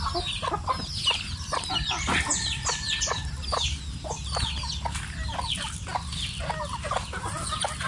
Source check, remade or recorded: recorded